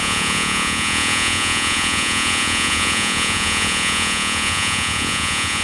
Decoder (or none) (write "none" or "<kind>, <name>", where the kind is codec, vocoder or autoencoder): vocoder, Vocos